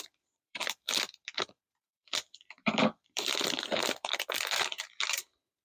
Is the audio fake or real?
fake